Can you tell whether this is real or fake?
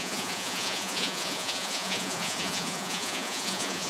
fake